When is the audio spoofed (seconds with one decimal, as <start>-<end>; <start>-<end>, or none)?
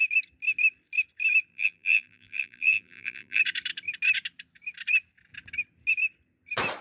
1.5-3.4